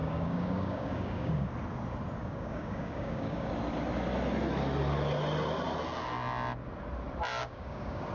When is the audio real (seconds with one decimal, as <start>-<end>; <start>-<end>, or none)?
1.5-2.2; 3.5-7.4